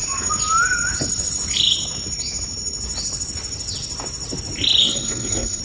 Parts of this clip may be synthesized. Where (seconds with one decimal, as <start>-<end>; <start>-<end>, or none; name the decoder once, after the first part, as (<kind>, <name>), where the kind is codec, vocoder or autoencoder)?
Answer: 4.8-5.6 (codec, SNAC)